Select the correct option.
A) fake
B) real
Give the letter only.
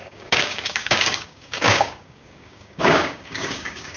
A